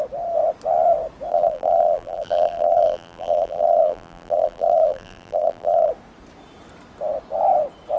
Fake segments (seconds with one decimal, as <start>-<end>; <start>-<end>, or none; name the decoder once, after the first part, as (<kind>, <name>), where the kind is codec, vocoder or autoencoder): 1.3-5.9 (vocoder, BigVGAN v2)